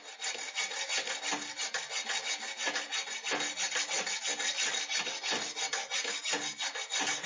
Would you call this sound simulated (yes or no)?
no